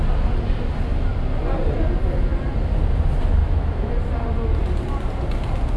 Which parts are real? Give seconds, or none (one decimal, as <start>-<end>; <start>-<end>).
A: 0.0-3.4; 3.9-5.8